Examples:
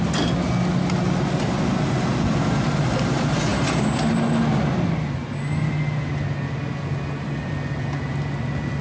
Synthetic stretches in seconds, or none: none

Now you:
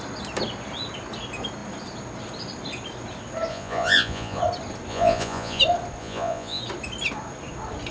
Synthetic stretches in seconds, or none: 3.5-4.4 (vocoder, Vocos); 4.9-5.6; 6.0-6.6

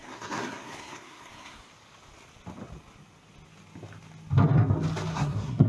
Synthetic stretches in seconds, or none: 0.0-1.7 (codec, SNAC); 5.1-5.7